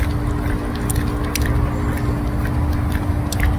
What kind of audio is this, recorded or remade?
recorded